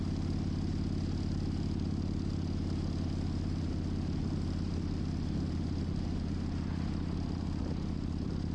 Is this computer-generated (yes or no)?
no